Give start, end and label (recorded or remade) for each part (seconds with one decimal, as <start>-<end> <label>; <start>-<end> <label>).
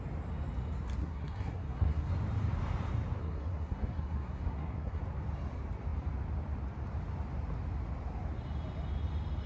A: 0.0-1.0 recorded; 1.0-2.1 remade; 2.1-3.2 recorded; 3.2-5.0 remade; 5.0-9.5 recorded